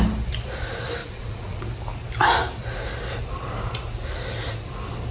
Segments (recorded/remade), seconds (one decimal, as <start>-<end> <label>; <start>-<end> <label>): 0.0-1.0 recorded; 1.0-1.6 remade; 1.6-5.1 recorded